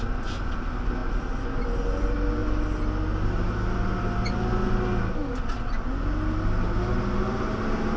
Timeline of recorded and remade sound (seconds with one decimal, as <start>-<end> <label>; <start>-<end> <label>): 0.0-8.0 recorded